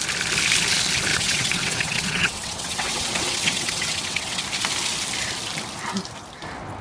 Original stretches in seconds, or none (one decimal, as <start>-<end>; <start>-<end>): 0.0-1.1; 4.4-6.8